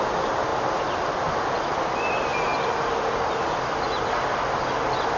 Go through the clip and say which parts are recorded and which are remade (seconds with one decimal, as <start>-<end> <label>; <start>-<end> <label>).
0.0-5.2 recorded